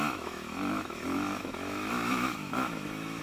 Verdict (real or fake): fake